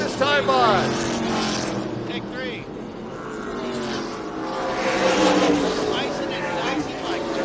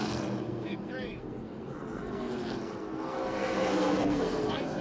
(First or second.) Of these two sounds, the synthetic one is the second